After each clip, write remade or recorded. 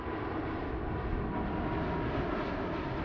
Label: recorded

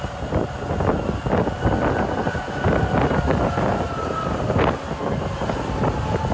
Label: recorded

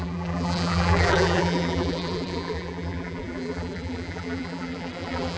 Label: remade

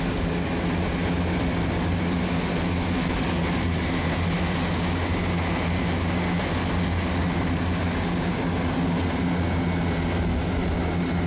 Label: recorded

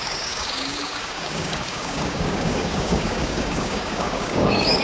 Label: remade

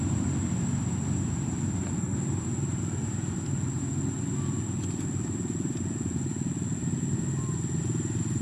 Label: recorded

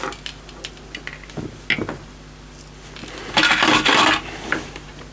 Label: recorded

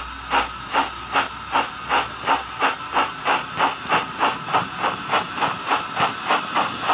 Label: recorded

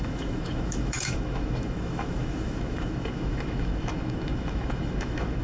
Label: remade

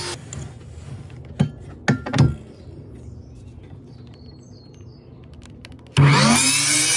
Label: recorded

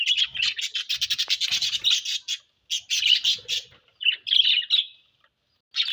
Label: recorded